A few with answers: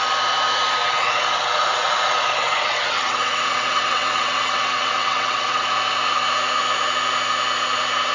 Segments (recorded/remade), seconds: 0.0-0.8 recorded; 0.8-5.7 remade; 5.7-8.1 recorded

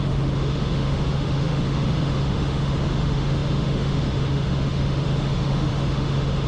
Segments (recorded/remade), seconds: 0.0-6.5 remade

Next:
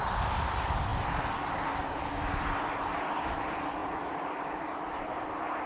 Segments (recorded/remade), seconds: 0.0-5.7 recorded

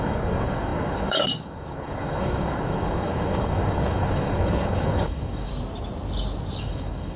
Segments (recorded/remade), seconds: 0.0-5.5 remade; 5.5-6.6 recorded; 6.6-7.2 remade